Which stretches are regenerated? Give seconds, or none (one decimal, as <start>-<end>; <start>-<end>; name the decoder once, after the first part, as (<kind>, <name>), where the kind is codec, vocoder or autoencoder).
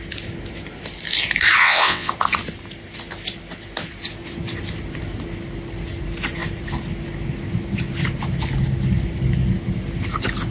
1.6-2.1 (vocoder, WaveNeXt)